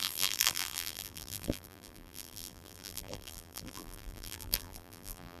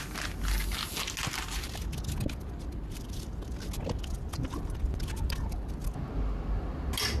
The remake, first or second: first